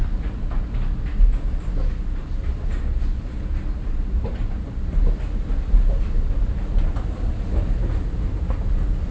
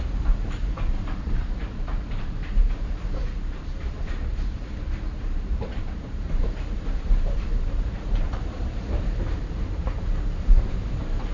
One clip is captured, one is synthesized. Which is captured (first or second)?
first